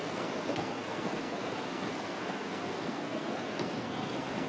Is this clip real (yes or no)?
no